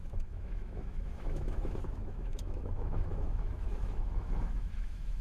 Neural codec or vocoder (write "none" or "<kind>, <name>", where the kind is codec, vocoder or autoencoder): autoencoder, DAC-VAE